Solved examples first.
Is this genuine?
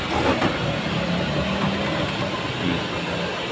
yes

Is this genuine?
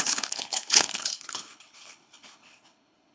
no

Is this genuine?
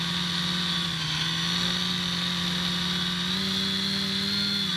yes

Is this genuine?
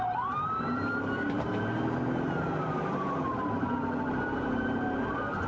no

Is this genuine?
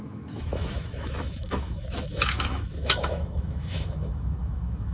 no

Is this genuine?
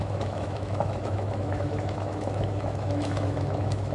no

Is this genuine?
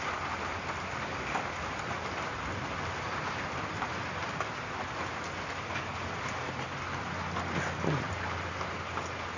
yes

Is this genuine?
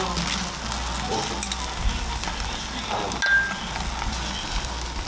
yes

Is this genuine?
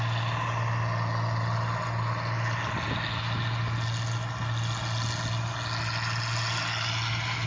yes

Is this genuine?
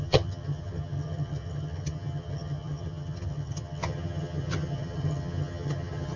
no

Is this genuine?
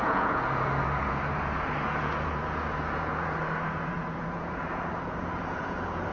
no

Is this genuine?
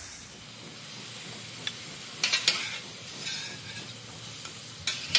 yes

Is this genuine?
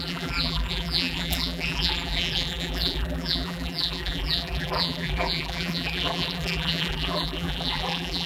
no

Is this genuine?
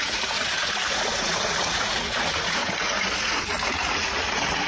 no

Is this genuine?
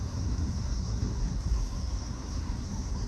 no